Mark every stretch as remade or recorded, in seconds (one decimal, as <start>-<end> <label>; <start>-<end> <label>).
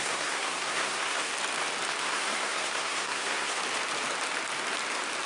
0.0-1.3 remade; 1.3-2.0 recorded; 2.0-3.6 remade; 3.6-5.3 recorded